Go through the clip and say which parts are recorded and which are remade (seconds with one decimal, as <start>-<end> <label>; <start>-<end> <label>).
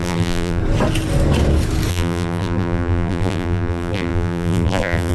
0.0-0.6 remade; 0.6-1.9 recorded; 1.9-5.1 remade